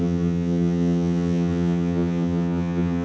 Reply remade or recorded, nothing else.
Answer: remade